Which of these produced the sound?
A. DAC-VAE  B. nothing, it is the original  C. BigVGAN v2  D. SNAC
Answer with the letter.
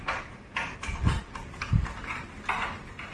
B